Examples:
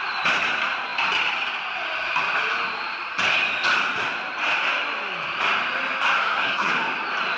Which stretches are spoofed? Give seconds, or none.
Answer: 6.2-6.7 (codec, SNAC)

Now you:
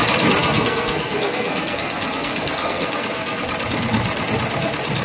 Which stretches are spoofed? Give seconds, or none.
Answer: 0.4-3.4 (codec, SNAC)

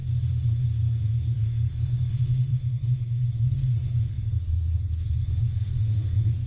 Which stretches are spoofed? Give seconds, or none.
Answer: 0.8-6.5 (codec, SNAC)

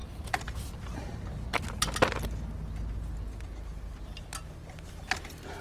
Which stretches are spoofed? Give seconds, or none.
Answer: none

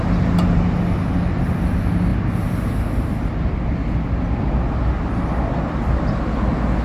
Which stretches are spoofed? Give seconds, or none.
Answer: none

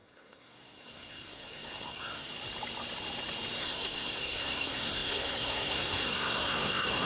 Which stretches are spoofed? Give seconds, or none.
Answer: 0.0-2.3 (codec, SNAC); 3.6-7.1

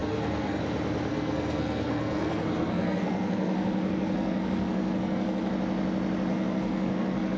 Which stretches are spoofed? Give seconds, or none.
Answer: 0.0-0.6 (codec, SNAC); 1.1-5.5; 6.3-7.4

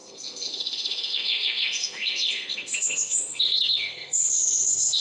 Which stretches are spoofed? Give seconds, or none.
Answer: 0.0-5.0 (codec, SNAC)